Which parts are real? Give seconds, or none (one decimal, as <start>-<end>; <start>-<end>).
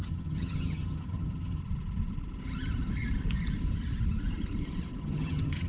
1.6-5.0